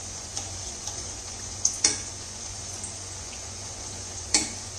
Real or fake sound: fake